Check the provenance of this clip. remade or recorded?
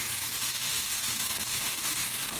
remade